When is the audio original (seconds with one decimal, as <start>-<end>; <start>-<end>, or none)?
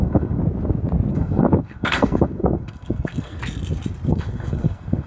0.4-1.1; 3.4-4.1